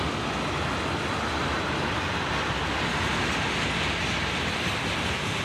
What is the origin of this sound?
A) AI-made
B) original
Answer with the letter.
B